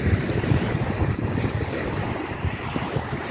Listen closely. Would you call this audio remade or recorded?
remade